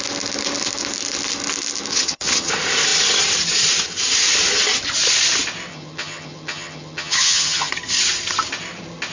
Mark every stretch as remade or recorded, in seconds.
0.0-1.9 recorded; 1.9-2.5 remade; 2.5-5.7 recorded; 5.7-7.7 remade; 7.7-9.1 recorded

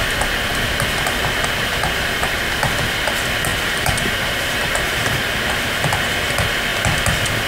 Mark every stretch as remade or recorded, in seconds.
0.0-3.5 recorded; 3.5-5.3 remade; 5.3-7.5 recorded